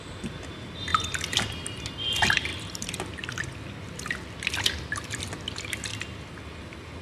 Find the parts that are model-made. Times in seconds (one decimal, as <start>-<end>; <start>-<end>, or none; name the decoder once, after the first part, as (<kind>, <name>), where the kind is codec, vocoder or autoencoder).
0.9-1.8 (vocoder, BigVGAN v2); 2.5-5.2